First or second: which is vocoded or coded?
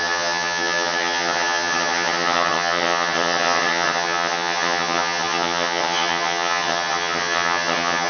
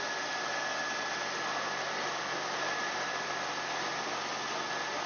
first